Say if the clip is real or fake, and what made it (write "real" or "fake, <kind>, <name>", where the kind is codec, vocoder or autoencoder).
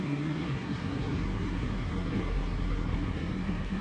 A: fake, codec, SNAC